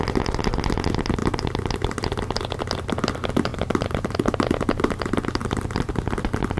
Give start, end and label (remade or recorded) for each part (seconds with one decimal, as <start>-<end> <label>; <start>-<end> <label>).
0.0-1.2 recorded; 1.2-1.7 remade; 1.7-3.5 recorded; 3.5-4.2 remade; 4.2-5.4 recorded; 5.4-5.9 remade; 5.9-6.6 recorded